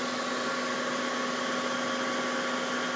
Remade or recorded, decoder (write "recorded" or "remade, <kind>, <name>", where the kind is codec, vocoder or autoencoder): recorded